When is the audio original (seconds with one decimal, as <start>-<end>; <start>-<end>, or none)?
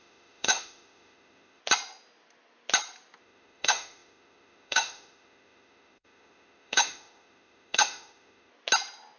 1.6-3.2; 8.5-9.2